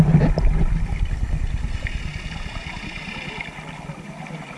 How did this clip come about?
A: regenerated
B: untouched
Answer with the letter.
B